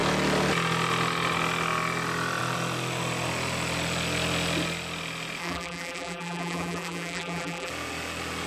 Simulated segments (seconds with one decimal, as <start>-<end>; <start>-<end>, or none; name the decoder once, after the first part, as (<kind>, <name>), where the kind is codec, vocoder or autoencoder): 5.4-7.7 (vocoder, BigVGAN v2)